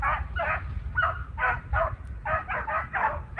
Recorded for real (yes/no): yes